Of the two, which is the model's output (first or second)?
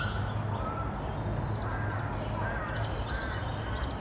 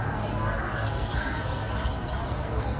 second